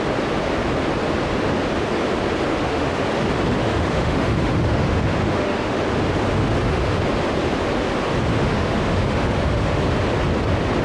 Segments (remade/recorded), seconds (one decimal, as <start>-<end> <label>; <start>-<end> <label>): 0.0-2.5 recorded; 2.5-3.1 remade; 3.1-3.6 recorded; 3.6-5.8 remade; 5.8-6.3 recorded; 6.3-7.0 remade; 7.0-8.3 recorded; 8.3-9.8 remade; 9.8-10.8 recorded